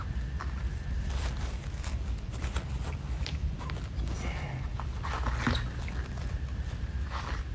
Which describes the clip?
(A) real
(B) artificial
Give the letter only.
A